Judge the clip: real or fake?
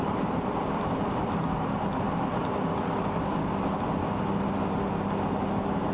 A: real